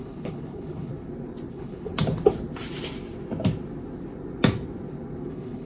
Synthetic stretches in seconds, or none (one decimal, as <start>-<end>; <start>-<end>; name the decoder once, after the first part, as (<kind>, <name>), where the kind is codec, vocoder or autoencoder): 0.0-0.9 (codec, HILCodec); 1.5-1.9; 5.3-5.7